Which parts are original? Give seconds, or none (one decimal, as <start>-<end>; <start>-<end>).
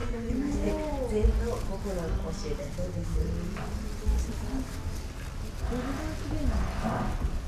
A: 0.7-2.6; 3.2-7.5